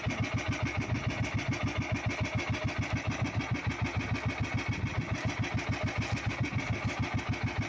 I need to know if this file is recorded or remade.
recorded